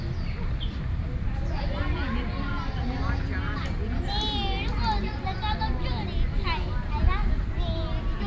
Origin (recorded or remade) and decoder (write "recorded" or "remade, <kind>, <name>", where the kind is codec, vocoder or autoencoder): recorded